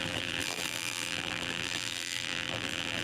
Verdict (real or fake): fake